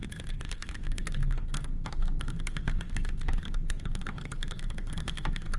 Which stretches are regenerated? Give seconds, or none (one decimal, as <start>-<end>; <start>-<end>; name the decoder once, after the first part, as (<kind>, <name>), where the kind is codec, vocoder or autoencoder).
0.0-5.6 (codec, SNAC)